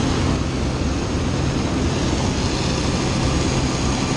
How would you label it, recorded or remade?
recorded